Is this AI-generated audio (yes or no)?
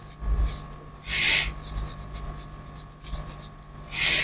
no